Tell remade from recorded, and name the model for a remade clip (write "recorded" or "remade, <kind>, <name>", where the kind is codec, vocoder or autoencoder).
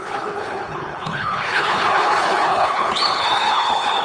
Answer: remade, codec, HILCodec